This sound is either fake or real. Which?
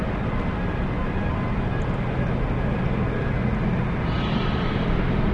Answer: real